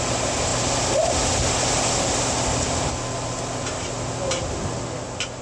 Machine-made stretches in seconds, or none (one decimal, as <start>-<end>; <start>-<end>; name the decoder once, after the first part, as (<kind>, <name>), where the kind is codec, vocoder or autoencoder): none